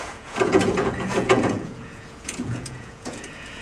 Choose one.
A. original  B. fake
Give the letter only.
B